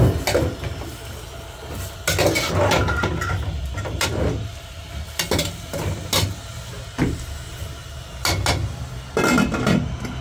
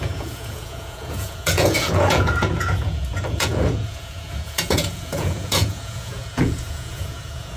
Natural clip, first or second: first